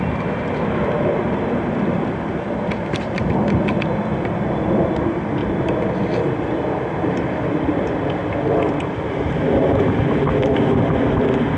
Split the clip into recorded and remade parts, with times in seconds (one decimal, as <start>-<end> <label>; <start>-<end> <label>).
0.0-5.4 recorded; 5.4-8.3 remade; 8.3-11.6 recorded